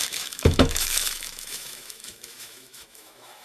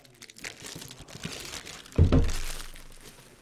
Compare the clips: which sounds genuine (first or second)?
second